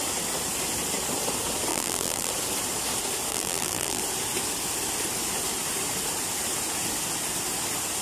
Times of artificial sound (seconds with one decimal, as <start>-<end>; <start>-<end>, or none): 1.7-2.3; 3.3-4.0